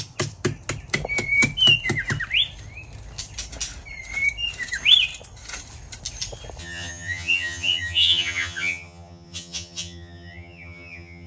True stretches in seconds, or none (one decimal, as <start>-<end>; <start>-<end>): 0.0-6.6